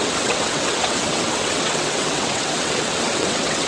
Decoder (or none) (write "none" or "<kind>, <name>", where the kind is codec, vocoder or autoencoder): vocoder, WaveNeXt